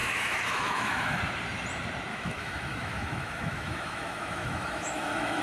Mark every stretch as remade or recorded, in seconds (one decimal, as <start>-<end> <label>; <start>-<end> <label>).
0.0-1.2 remade; 1.2-2.1 recorded; 2.1-5.4 remade